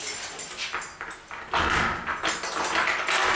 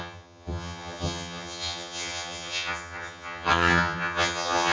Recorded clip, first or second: first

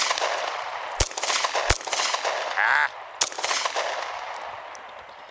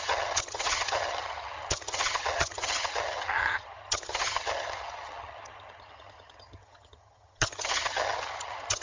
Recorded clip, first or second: first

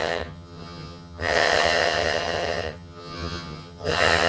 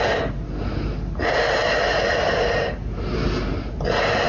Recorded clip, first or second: second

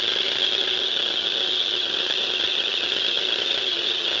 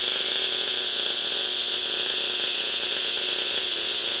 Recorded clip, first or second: second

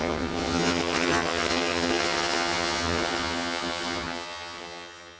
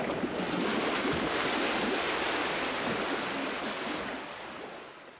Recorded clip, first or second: second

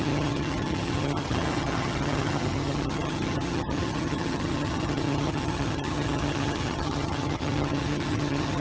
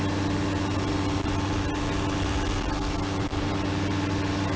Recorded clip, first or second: second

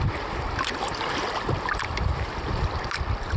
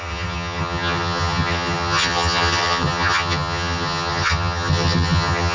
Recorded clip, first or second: first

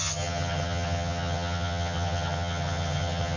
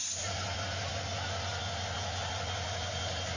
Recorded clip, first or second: second